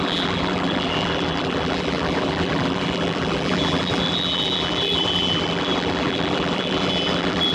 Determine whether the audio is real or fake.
fake